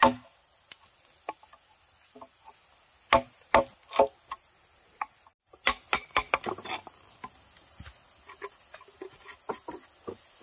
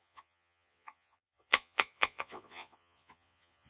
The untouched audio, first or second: first